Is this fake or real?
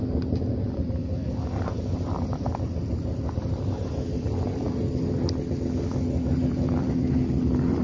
fake